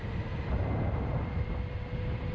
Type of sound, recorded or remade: recorded